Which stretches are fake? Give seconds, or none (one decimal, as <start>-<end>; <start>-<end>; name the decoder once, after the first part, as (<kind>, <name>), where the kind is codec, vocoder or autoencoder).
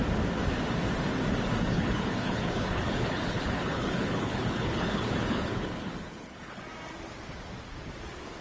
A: 1.7-6.6 (codec, HILCodec)